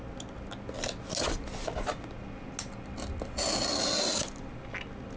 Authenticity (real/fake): real